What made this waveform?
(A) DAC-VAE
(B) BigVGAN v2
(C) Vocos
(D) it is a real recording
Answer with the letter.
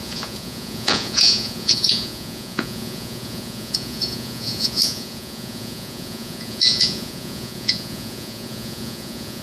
C